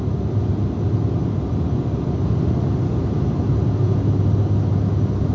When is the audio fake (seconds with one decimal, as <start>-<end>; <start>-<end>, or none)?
none